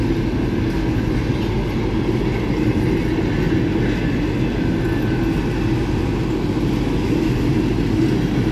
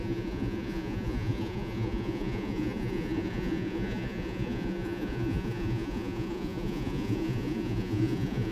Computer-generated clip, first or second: second